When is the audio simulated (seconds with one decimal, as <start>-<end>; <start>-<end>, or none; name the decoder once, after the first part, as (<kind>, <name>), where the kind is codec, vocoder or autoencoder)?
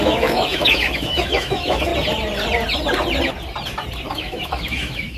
0.0-1.9 (autoencoder, DAC-VAE); 4.1-5.2